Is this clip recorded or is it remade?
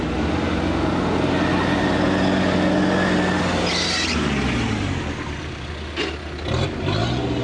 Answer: recorded